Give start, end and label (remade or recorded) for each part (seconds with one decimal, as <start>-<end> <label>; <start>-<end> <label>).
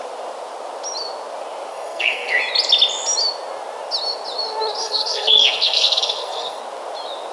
0.0-1.7 recorded; 1.7-2.4 remade; 2.4-4.8 recorded; 4.8-6.6 remade; 6.6-7.3 recorded